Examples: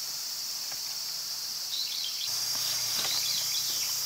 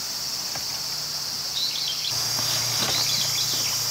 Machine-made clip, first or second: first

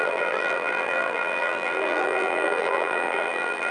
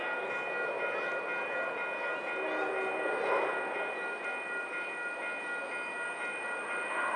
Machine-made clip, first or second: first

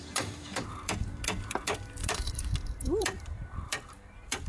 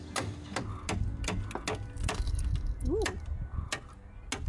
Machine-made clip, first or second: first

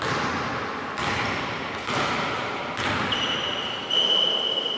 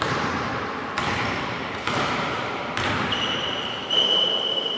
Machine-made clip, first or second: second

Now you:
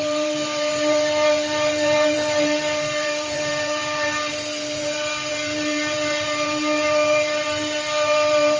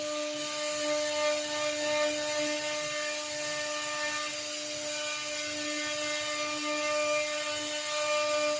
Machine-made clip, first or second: first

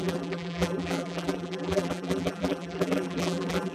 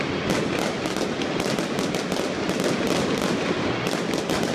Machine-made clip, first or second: first